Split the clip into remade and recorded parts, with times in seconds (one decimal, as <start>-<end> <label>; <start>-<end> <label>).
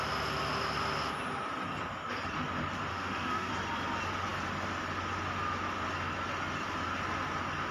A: 0.0-2.9 recorded; 2.9-3.5 remade; 3.5-7.7 recorded